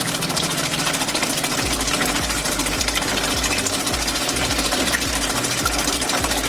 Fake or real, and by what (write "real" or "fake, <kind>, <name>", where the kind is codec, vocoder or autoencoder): real